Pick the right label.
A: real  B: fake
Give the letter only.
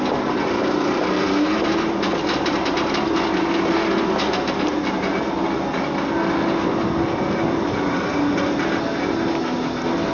A